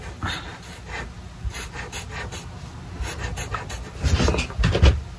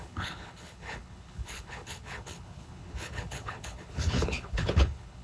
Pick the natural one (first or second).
first